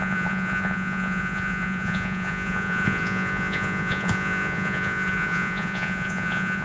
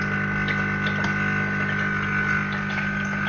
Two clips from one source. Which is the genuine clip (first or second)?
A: second